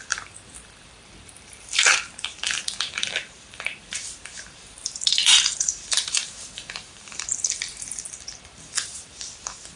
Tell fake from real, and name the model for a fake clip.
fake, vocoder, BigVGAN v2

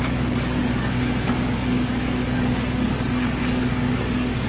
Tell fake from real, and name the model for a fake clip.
fake, codec, DAC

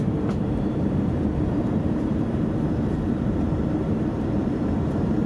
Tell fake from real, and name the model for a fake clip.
fake, vocoder, BigVGAN v2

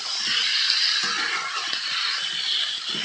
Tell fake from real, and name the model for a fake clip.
real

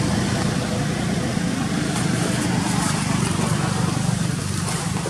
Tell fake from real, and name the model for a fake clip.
real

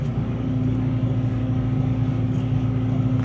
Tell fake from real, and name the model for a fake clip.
fake, codec, DAC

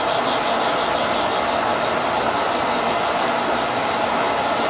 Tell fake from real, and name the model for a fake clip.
real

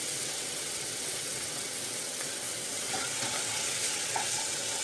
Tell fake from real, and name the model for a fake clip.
fake, vocoder, WaveNeXt